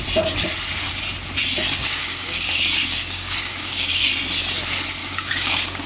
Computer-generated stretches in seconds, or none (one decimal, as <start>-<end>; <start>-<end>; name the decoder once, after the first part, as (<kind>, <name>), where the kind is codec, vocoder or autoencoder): 2.0-4.1 (codec, DAC); 5.0-5.9